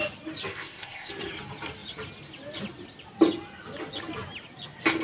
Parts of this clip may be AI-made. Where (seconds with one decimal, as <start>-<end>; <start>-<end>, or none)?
0.5-1.1